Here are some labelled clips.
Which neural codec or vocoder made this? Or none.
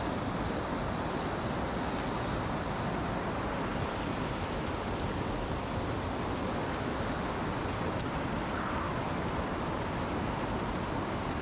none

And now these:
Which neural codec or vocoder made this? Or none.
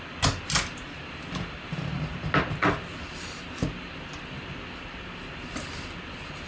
none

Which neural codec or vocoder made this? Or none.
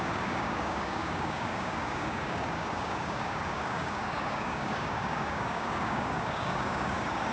codec, DAC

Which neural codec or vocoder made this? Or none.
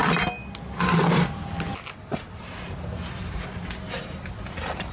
none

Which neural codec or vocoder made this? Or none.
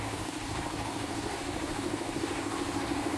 codec, DAC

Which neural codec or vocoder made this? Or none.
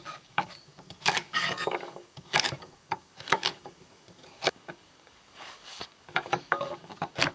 codec, DAC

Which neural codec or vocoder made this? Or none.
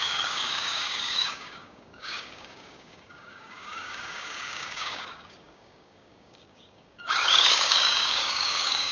codec, DAC